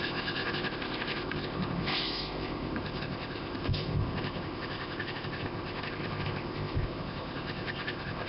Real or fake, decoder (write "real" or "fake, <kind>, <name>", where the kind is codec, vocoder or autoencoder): fake, codec, ZipCodec